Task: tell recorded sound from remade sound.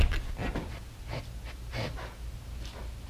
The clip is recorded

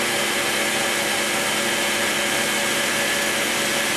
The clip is recorded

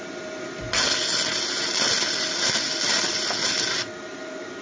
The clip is recorded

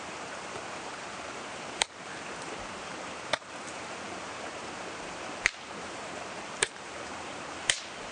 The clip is remade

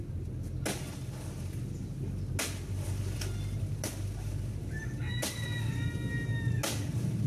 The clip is recorded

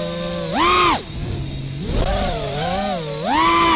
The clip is recorded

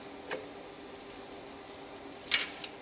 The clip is recorded